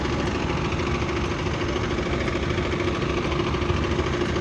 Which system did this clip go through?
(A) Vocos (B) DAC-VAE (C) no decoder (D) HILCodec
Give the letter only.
C